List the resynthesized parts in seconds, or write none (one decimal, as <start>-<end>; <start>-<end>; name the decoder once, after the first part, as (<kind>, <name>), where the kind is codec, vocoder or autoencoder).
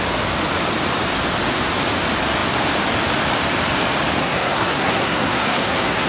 4.2-6.1 (codec, SNAC)